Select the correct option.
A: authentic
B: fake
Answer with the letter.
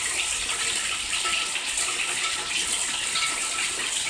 A